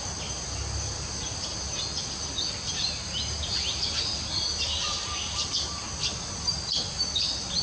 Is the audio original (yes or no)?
yes